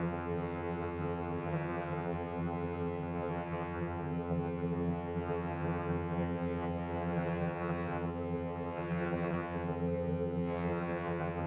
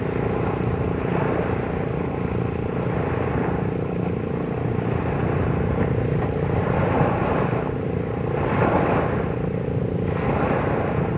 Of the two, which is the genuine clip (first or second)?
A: second